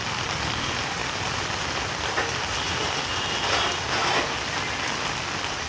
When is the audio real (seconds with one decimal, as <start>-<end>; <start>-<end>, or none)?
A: 0.0-5.7